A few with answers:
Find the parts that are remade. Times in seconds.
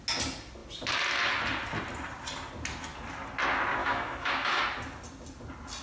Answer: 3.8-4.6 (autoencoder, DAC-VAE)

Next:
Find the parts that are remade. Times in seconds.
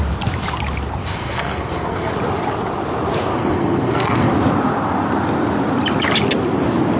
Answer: 1.0-2.1 (codec, SNAC); 3.3-4.3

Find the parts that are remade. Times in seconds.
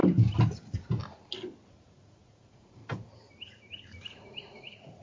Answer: 1.7-2.8 (vocoder, Vocos); 4.4-5.0